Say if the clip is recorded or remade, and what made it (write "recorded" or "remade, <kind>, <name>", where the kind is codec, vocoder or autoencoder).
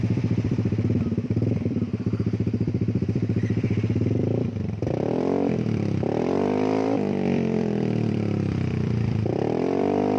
remade, vocoder, BigVGAN v2